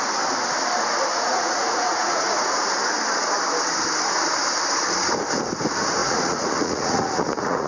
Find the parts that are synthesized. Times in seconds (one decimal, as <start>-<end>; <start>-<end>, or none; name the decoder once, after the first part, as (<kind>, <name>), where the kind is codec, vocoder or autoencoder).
1.1-2.6 (vocoder, Vocos); 6.0-7.7